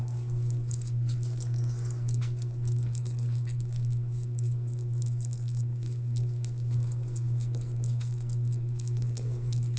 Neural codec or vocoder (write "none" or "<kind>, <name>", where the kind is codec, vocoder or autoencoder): codec, SNAC